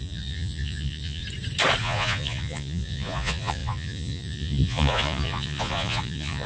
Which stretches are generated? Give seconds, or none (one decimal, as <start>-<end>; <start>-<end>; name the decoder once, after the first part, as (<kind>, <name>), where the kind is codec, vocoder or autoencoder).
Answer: 0.0-1.2 (vocoder, Vocos); 1.8-6.5